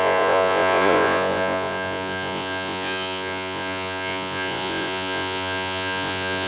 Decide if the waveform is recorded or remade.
remade